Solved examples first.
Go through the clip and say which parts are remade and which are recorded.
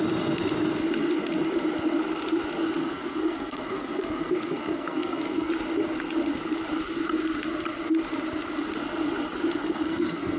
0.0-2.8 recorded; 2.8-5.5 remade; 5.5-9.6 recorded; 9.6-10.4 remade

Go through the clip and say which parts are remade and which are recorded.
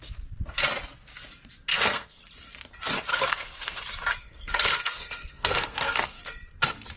0.0-1.7 recorded; 1.7-2.2 remade; 2.2-3.1 recorded; 3.1-3.8 remade; 3.8-4.2 recorded; 4.2-6.2 remade; 6.2-7.0 recorded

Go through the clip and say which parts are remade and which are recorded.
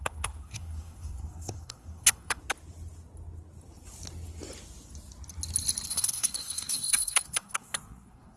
0.0-2.4 remade; 2.4-5.9 recorded; 5.9-8.4 remade